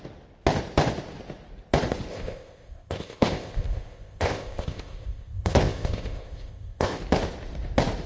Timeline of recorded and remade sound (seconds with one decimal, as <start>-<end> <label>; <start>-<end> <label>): 0.0-2.1 recorded; 2.1-7.0 remade; 7.0-8.1 recorded